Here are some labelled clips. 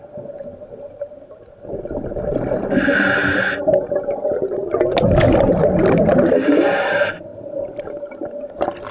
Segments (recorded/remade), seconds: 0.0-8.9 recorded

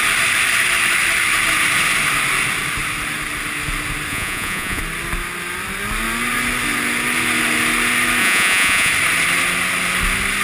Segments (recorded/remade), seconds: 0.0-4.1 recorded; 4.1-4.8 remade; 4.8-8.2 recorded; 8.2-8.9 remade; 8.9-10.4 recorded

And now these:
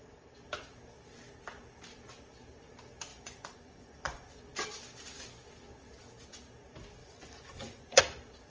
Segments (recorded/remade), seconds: 0.0-3.1 recorded; 3.1-4.4 remade; 4.4-7.0 recorded; 7.0-8.0 remade; 8.0-8.5 recorded